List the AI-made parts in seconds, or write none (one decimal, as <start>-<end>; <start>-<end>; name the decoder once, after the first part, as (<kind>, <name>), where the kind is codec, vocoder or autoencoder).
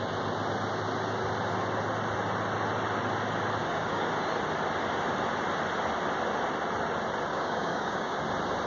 3.6-4.1 (codec, DAC); 7.3-8.2